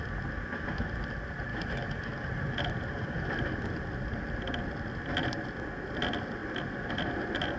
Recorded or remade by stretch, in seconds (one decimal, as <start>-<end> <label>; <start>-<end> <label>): 0.0-1.5 recorded; 1.5-2.0 remade; 2.0-7.6 recorded